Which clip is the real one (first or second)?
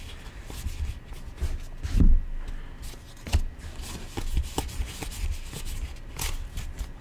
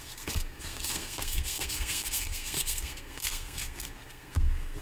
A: first